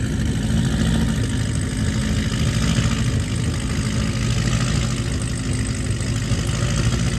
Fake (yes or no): no